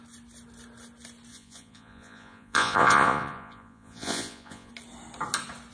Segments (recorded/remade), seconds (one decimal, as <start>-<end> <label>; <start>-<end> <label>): 0.0-1.3 recorded; 1.3-4.7 remade; 4.7-5.7 recorded